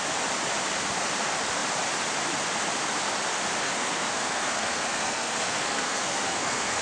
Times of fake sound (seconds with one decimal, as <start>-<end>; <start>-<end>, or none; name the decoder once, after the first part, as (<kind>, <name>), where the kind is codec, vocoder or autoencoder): 3.6-6.8 (codec, SNAC)